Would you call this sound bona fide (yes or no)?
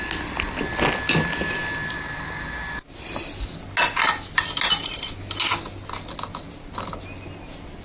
yes